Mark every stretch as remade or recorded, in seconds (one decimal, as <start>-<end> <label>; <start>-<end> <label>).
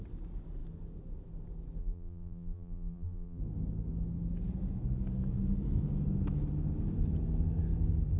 0.0-1.8 recorded; 1.8-3.4 remade; 3.4-8.2 recorded